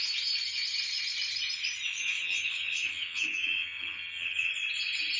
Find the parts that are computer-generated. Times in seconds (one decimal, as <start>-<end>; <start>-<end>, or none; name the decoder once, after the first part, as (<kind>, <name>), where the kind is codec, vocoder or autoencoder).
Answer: 2.0-4.5 (vocoder, HiFi-GAN)

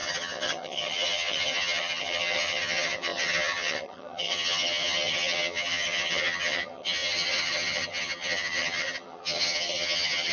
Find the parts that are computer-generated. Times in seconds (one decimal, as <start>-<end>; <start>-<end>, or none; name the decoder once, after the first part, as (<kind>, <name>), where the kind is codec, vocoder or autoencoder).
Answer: 0.0-10.3 (vocoder, HiFi-GAN)